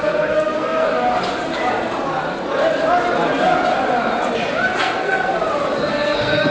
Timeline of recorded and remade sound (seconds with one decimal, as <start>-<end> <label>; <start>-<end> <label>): 0.0-0.9 remade; 0.9-4.8 recorded; 4.8-5.3 remade; 5.3-5.9 recorded; 5.9-6.5 remade